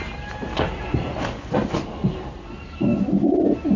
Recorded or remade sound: recorded